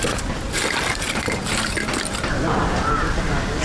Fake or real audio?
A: fake